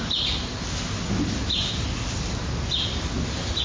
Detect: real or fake real